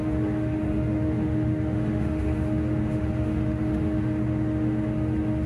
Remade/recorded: remade